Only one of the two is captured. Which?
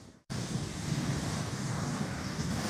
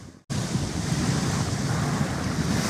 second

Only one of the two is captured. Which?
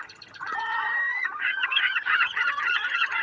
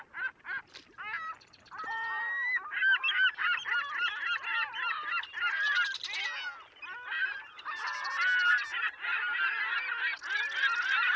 second